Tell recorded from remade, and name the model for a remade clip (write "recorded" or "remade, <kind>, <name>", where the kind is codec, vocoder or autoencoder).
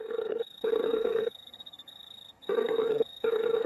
remade, codec, SNAC